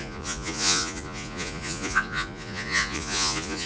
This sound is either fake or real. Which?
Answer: fake